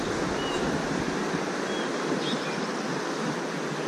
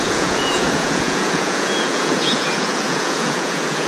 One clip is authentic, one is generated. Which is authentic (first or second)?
first